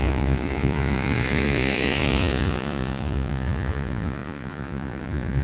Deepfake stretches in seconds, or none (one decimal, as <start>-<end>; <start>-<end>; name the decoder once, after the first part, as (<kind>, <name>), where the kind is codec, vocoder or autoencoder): 0.0-5.4 (vocoder, Vocos)